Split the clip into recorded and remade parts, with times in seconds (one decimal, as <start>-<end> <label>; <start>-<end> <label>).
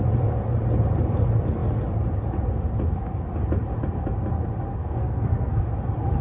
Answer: 0.0-4.8 recorded; 4.8-5.6 remade; 5.6-6.2 recorded